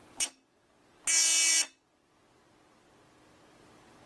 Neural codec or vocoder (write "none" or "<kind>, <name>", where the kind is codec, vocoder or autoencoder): none